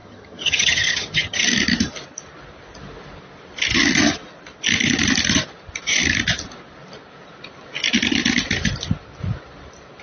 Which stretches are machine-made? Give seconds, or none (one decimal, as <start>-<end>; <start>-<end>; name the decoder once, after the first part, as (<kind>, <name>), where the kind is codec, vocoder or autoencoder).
0.0-1.4 (vocoder, HiFi-GAN)

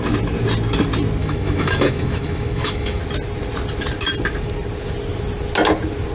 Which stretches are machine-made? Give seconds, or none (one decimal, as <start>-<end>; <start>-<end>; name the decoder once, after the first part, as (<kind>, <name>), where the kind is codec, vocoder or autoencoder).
1.2-3.0 (autoencoder, DAC-VAE)